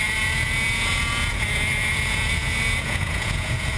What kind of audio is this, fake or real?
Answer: fake